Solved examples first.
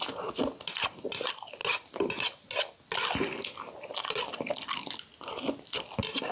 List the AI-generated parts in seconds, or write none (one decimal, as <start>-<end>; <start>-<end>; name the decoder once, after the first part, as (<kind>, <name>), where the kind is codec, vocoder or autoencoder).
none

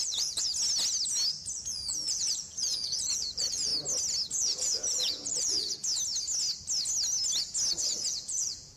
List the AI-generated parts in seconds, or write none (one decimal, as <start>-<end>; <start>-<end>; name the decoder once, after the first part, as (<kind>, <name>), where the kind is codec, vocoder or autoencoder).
0.0-0.5 (vocoder, Vocos); 1.5-3.7; 4.3-5.8; 7.7-8.8

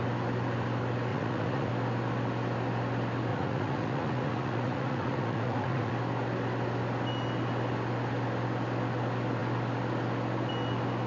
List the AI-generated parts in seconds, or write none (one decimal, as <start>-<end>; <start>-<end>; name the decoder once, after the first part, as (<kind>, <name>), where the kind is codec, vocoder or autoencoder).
1.1-1.7 (vocoder, Vocos); 3.3-5.9